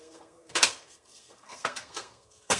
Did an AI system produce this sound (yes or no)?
yes